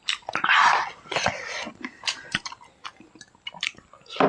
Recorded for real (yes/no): yes